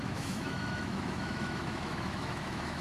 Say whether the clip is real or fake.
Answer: fake